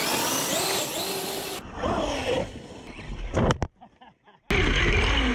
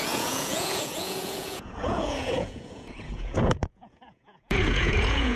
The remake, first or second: second